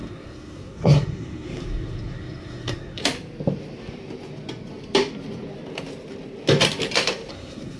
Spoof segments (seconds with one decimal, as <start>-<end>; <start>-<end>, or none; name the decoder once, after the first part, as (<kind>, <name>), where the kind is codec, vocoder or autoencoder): 0.0-3.0 (codec, SNAC); 7.3-7.8

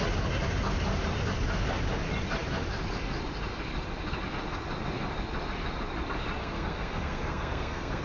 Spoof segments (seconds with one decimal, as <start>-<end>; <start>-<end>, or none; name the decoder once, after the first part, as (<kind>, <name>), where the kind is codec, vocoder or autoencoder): 6.4-8.0 (codec, SNAC)

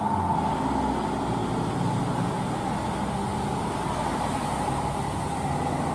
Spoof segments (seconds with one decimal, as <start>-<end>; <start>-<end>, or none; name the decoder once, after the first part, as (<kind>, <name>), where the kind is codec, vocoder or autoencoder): none

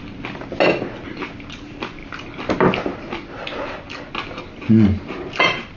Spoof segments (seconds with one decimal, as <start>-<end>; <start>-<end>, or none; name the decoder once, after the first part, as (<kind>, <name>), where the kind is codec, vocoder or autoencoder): none

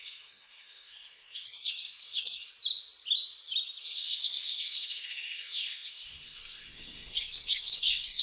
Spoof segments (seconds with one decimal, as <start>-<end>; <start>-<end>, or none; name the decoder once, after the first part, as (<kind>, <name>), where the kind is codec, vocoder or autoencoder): 0.0-2.5 (codec, SNAC); 3.8-8.2